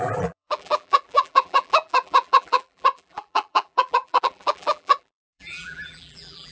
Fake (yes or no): yes